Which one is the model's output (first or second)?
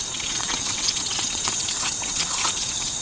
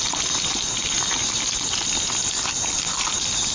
first